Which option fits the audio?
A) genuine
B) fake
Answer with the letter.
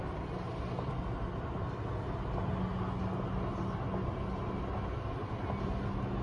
A